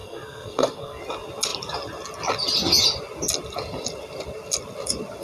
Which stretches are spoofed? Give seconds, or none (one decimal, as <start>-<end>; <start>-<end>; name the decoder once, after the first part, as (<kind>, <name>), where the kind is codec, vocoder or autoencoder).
0.0-1.0 (codec, SNAC)